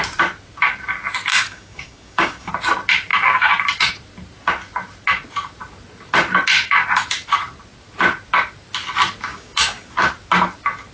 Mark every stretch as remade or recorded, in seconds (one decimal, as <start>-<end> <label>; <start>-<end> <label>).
0.0-1.3 recorded; 1.3-2.5 remade; 2.5-9.3 recorded; 9.3-9.9 remade; 9.9-10.9 recorded